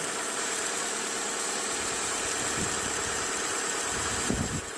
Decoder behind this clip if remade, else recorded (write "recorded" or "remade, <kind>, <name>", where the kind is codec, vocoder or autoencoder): remade, vocoder, BigVGAN v2